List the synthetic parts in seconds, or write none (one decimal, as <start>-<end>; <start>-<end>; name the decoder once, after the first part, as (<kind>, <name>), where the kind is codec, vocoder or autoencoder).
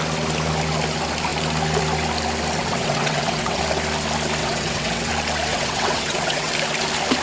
2.6-3.6 (vocoder, WaveNeXt); 4.4-5.1; 5.5-6.5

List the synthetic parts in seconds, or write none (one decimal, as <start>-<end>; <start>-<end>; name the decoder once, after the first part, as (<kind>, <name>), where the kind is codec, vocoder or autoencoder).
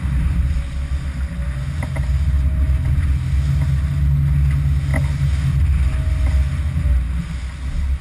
none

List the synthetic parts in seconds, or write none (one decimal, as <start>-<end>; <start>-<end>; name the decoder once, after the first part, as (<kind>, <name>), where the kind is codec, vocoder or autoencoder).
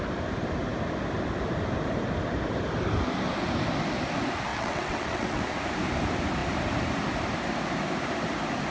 4.5-5.4 (vocoder, WaveNeXt)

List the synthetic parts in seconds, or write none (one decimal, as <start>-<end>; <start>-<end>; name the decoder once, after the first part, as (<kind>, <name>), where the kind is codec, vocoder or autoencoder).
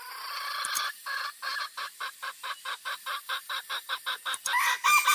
1.0-4.0 (vocoder, BigVGAN v2)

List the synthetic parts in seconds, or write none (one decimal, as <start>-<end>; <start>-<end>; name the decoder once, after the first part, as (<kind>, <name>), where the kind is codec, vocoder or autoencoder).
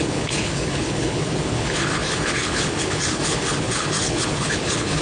0.0-5.0 (codec, HILCodec)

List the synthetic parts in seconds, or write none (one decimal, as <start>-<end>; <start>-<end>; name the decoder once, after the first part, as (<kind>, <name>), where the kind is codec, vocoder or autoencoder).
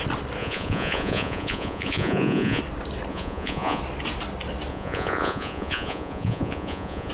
0.4-2.6 (vocoder, Vocos); 3.1-3.8; 4.7-7.1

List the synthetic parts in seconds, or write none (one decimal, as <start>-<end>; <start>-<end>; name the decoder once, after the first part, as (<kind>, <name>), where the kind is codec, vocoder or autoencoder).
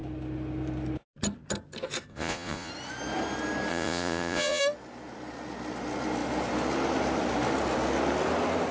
2.1-2.7 (vocoder, Vocos); 3.7-4.6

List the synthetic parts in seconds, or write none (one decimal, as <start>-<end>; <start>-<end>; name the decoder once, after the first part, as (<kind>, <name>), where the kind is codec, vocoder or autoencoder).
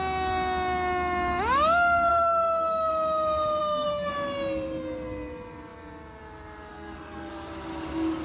2.1-2.9 (codec, SNAC); 3.6-4.1; 6.7-7.3